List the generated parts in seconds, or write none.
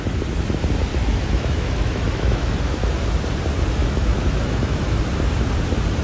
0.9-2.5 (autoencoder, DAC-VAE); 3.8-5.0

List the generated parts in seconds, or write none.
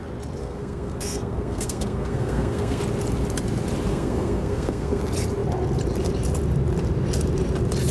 0.4-2.8 (codec, SNAC); 3.9-5.0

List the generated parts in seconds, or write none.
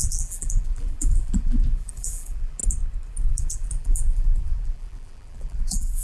0.0-2.6 (vocoder, BigVGAN v2); 3.3-6.0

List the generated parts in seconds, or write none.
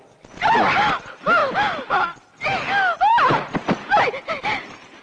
none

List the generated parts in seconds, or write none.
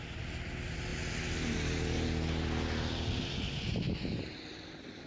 none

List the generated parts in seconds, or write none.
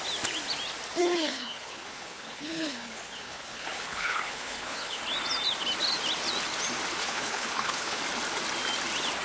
1.0-5.0 (codec, HILCodec); 7.0-8.0